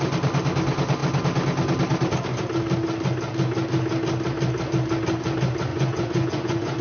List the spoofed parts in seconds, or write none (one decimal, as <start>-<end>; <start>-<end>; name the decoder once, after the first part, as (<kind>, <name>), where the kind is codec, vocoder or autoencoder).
5.7-6.8 (vocoder, Vocos)